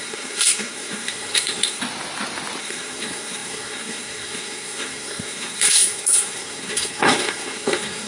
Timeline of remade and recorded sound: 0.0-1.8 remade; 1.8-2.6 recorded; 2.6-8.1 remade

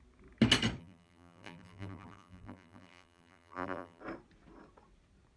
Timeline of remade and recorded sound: 0.0-0.8 recorded; 0.8-4.0 remade; 4.0-5.4 recorded